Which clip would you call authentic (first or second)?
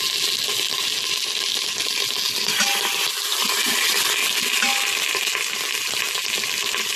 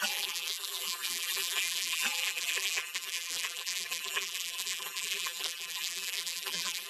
first